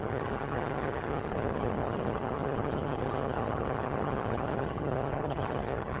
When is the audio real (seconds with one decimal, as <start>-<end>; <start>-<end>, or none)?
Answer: none

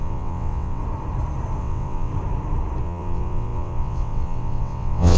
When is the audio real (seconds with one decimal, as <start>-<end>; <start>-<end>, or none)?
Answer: 0.8-1.6; 2.1-2.8

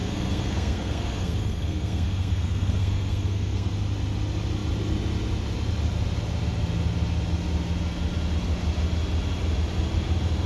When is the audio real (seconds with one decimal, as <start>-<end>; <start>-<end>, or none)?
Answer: 3.7-10.5

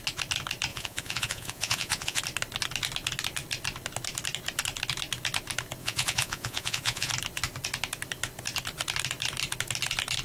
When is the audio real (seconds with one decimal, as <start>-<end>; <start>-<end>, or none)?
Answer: 0.0-0.7; 2.2-5.8; 7.1-10.2